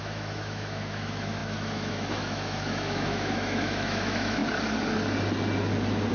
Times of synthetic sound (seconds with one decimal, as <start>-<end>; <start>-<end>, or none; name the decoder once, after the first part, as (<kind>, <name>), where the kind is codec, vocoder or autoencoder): 0.0-4.4 (autoencoder, DAC-VAE)